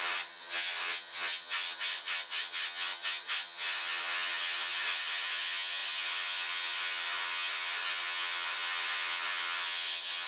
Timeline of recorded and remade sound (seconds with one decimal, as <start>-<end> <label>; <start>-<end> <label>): 0.0-10.3 remade